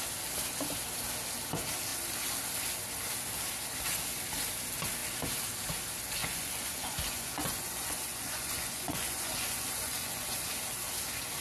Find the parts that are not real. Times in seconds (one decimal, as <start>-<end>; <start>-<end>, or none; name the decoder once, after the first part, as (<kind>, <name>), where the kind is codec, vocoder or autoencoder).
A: 6.2-10.5 (vocoder, Vocos)